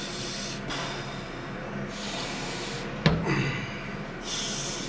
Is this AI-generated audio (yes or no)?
no